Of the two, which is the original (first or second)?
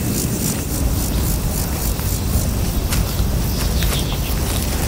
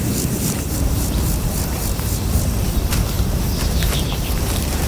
first